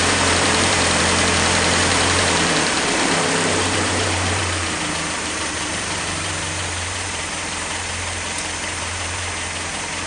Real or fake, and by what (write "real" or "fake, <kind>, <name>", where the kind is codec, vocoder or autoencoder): fake, vocoder, BigVGAN v2